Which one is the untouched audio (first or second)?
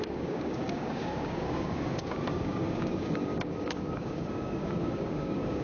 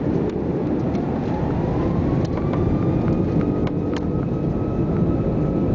second